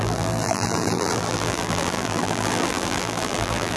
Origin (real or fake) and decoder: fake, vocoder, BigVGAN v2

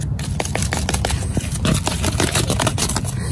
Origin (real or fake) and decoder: real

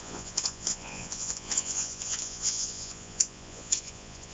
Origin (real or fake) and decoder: fake, vocoder, Vocos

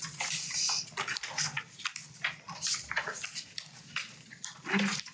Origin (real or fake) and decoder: real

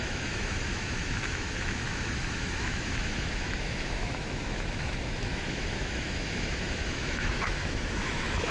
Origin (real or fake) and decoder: fake, autoencoder, DAC-VAE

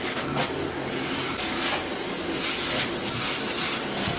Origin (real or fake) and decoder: real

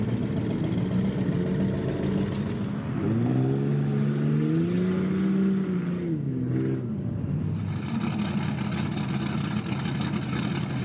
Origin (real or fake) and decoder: real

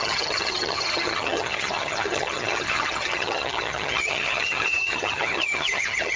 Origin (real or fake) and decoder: fake, vocoder, HiFi-GAN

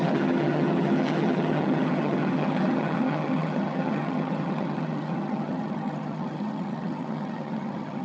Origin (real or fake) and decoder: fake, vocoder, HiFi-GAN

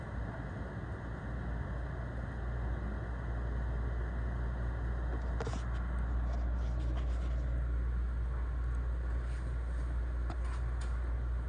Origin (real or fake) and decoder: real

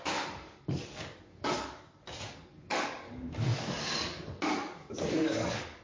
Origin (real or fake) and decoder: fake, codec, DAC